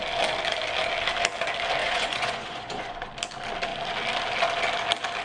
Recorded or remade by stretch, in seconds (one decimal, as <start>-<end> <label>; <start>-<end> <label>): 0.0-1.8 recorded; 1.8-3.1 remade; 3.1-5.2 recorded